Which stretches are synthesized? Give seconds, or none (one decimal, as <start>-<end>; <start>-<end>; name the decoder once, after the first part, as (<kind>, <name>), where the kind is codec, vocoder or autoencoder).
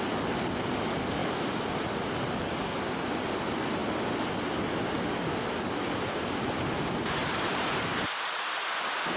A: 1.2-2.5 (vocoder, BigVGAN v2); 7.2-7.9